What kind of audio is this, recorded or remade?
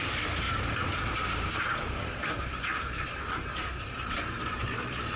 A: remade